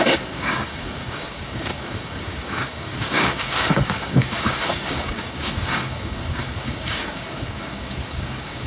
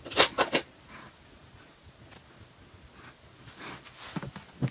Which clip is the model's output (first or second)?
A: first